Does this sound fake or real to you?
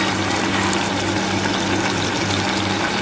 real